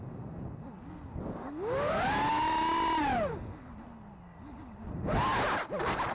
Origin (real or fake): real